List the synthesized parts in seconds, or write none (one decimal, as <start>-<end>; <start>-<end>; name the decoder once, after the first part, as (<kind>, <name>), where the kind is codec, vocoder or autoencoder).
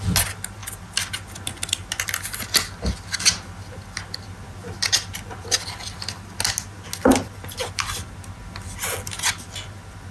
none